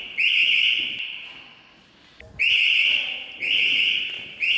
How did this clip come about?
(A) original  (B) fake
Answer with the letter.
A